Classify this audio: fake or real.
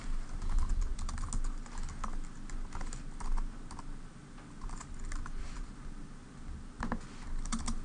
real